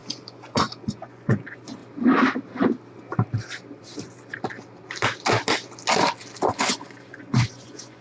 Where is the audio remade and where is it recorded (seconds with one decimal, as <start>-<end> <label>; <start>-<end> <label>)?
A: 0.0-1.8 remade; 1.8-6.6 recorded; 6.6-8.0 remade